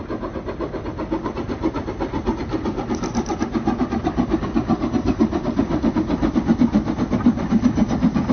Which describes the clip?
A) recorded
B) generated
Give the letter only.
A